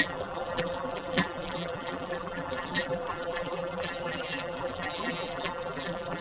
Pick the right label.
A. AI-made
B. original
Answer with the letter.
A